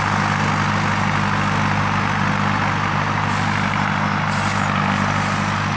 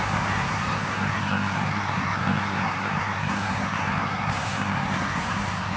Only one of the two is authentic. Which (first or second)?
first